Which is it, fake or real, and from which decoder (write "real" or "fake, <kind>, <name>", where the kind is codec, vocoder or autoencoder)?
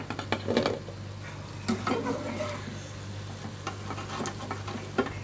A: real